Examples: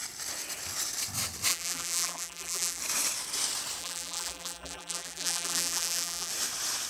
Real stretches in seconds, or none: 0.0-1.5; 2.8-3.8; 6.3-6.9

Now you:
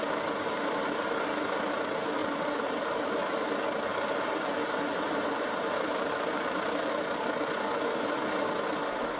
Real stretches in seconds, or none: 0.0-2.2; 3.1-3.9; 6.9-9.2